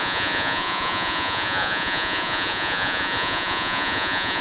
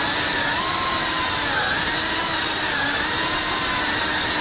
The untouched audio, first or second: second